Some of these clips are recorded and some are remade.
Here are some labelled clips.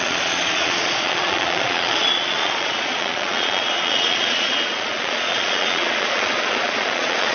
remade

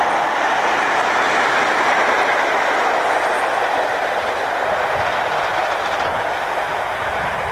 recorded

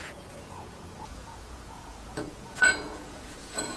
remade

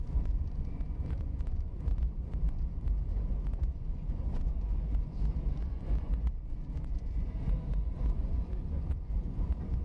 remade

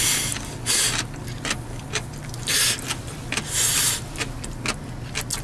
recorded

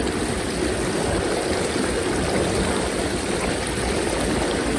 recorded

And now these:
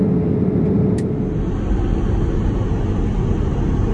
recorded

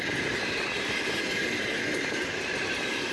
recorded